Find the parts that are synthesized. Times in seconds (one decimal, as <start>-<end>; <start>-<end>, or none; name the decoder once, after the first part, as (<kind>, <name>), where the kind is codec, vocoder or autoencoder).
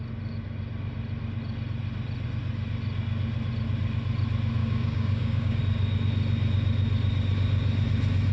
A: 4.6-5.6 (codec, DAC)